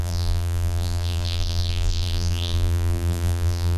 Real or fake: fake